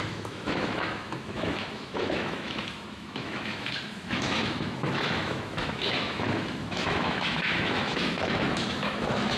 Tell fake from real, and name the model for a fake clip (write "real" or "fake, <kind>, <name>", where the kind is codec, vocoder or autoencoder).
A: fake, autoencoder, DAC-VAE